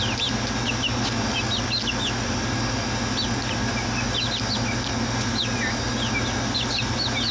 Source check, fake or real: real